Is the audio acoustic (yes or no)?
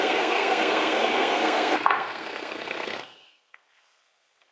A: no